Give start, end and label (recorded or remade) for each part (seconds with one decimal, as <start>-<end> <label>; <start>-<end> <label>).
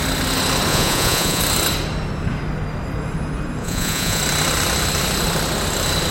0.0-0.7 recorded; 0.7-1.4 remade; 1.4-3.6 recorded; 3.6-4.2 remade; 4.2-6.1 recorded